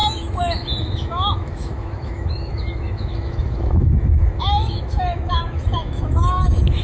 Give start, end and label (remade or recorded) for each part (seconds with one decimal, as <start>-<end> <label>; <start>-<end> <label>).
0.0-6.8 remade